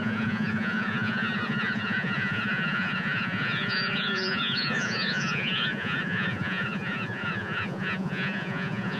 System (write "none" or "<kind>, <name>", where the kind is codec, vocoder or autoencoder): vocoder, Vocos